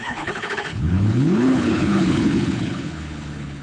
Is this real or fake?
fake